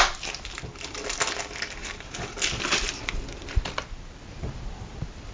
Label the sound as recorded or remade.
recorded